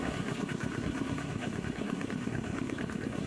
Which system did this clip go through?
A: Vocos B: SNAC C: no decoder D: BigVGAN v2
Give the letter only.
B